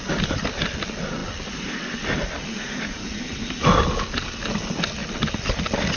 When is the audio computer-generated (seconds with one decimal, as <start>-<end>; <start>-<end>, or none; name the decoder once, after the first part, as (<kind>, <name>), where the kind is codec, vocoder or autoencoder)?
none